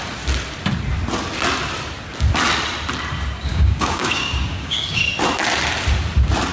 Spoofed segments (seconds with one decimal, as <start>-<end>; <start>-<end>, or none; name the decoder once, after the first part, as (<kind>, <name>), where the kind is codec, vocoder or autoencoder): 3.5-5.0 (codec, DAC)